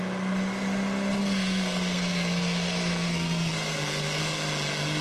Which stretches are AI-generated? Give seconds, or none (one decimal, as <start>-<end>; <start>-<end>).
1.2-4.2